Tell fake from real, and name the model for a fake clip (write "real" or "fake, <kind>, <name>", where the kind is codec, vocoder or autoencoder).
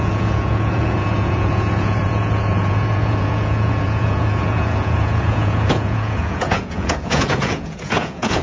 fake, vocoder, Vocos